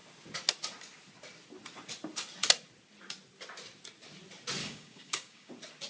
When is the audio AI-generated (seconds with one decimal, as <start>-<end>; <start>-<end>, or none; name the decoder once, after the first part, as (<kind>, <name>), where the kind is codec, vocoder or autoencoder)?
4.6-5.5 (codec, DAC)